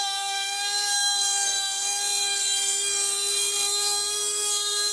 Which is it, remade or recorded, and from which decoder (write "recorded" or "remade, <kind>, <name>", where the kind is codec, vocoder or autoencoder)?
remade, codec, SNAC